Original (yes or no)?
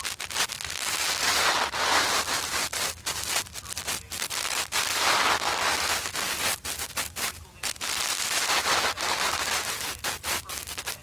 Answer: yes